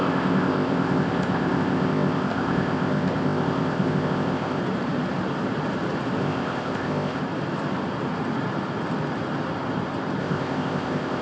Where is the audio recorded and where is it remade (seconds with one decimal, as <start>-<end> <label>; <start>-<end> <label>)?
0.0-4.6 remade; 4.6-6.2 recorded; 6.2-7.2 remade; 7.2-10.2 recorded; 10.2-11.2 remade